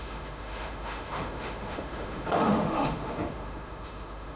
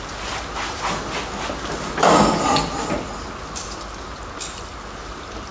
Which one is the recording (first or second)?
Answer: second